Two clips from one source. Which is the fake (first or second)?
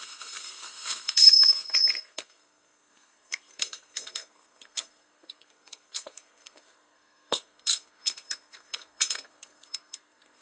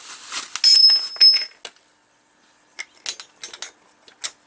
first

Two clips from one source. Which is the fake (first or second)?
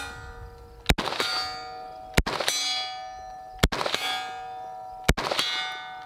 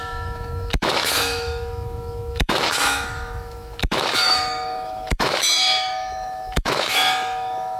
second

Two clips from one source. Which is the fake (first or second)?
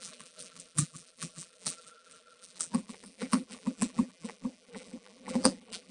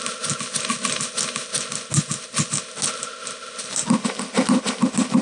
first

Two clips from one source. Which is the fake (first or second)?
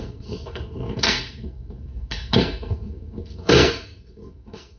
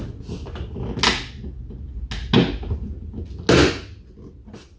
first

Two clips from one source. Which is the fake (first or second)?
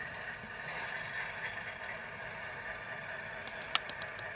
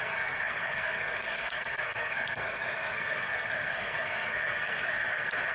second